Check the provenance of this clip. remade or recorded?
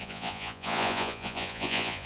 remade